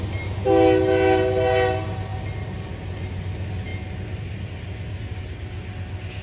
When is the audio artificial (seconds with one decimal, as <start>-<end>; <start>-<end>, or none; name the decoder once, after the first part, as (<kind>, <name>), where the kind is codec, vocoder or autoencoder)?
none